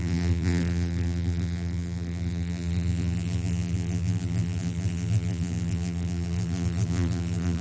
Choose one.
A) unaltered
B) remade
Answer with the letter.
B